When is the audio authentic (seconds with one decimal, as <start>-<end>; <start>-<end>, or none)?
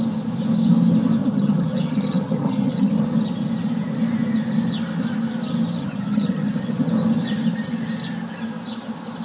0.0-1.2; 2.9-5.8; 6.9-9.2